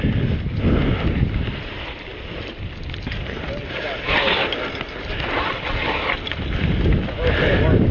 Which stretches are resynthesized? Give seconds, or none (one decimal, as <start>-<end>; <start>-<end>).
none